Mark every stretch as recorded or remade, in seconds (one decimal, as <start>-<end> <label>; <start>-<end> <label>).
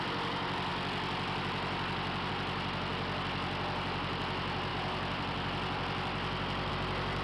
0.0-4.7 recorded; 4.7-6.7 remade; 6.7-7.2 recorded